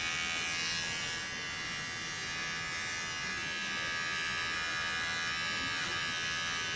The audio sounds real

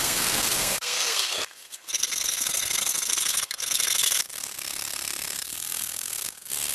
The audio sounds fake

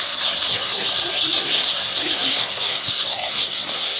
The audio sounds fake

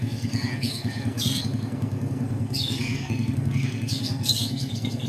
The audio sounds fake